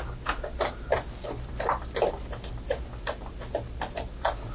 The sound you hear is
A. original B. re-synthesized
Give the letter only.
A